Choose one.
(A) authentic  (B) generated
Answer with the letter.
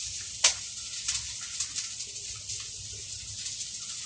A